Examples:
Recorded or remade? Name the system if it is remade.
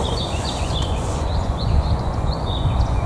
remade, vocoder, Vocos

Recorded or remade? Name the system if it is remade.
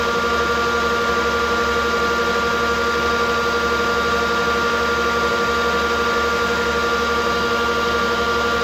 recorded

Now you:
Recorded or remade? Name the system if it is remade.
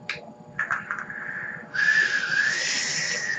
recorded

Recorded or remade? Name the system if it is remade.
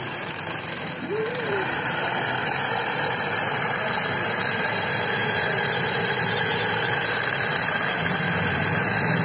remade, vocoder, BigVGAN v2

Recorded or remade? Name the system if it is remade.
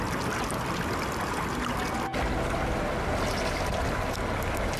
recorded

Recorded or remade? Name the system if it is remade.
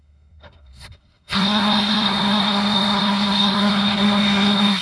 remade, codec, SNAC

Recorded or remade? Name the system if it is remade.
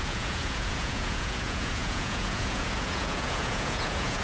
remade, vocoder, Vocos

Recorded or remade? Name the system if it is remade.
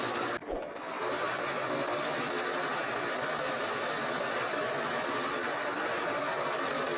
recorded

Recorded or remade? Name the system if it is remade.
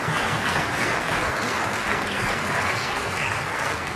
remade, codec, SNAC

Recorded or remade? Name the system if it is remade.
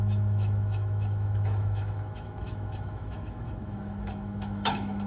remade, autoencoder, DAC-VAE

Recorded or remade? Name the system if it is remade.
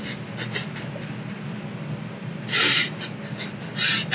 recorded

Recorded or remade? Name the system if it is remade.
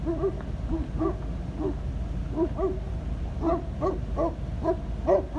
recorded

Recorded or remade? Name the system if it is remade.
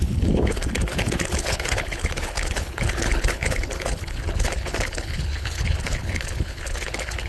remade, codec, HILCodec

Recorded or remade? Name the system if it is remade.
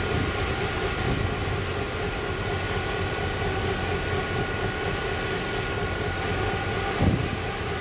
recorded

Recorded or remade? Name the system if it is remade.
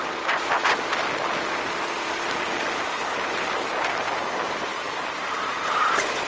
recorded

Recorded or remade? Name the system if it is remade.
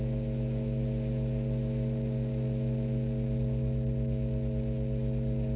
recorded